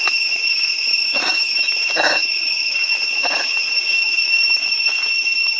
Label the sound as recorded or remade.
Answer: remade